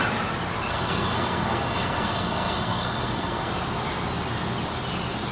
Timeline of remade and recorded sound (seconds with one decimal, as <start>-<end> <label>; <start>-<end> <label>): 0.0-0.7 recorded; 0.7-3.5 remade; 3.5-5.3 recorded